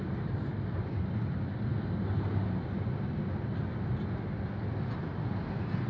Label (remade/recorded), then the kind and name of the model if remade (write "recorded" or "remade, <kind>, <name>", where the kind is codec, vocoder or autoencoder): recorded